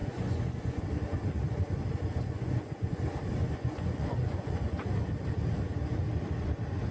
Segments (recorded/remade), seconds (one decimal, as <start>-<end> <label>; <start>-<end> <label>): 0.0-0.8 remade; 0.8-2.1 recorded; 2.1-3.0 remade; 3.0-3.4 recorded; 3.4-4.6 remade; 4.6-6.9 recorded